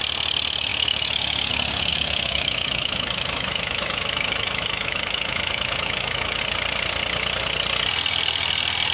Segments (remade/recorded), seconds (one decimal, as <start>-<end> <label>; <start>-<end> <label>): 0.0-0.7 recorded; 0.7-1.5 remade; 1.5-1.9 recorded; 1.9-6.4 remade; 6.4-8.9 recorded